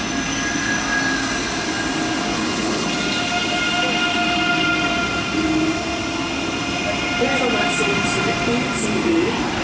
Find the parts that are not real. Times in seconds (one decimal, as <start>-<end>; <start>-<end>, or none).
2.3-2.9